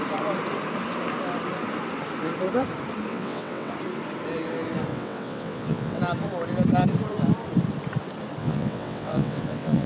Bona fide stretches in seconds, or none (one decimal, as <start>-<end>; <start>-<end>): 0.0-3.1; 3.7-4.9; 6.0-8.4